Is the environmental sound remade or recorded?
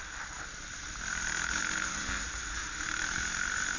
recorded